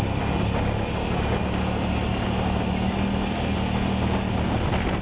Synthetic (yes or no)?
no